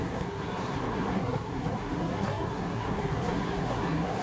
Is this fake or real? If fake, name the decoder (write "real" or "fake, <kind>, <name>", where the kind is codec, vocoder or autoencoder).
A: fake, codec, SNAC